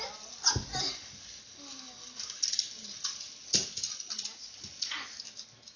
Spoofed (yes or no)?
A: no